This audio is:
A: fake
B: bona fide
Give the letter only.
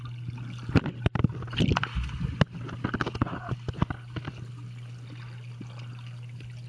B